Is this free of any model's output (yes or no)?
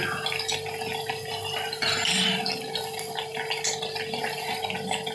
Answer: yes